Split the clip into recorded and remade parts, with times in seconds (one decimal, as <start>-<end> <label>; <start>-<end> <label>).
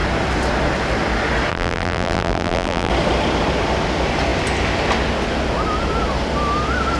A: 0.0-1.5 recorded; 1.5-2.9 remade; 2.9-7.0 recorded